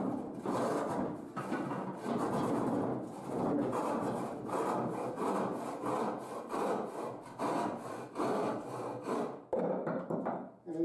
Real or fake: real